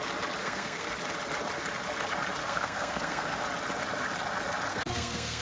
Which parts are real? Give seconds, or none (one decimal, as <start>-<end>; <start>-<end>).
0.0-0.4; 0.9-2.4; 3.4-4.7